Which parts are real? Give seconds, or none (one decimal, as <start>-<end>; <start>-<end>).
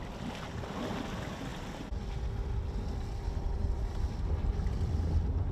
0.0-5.5